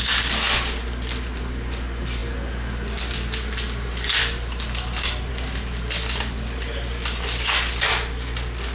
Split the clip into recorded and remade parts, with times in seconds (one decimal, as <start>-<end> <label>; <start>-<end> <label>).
0.0-8.7 recorded